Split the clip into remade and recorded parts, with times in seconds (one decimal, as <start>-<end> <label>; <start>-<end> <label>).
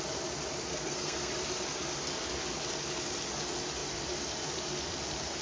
0.0-0.7 recorded; 0.7-1.3 remade; 1.3-5.4 recorded